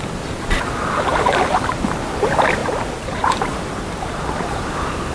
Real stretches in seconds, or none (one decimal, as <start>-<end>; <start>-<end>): 0.0-2.6; 4.2-5.1